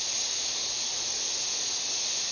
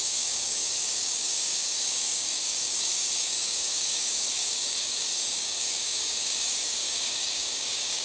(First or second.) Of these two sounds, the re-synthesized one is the second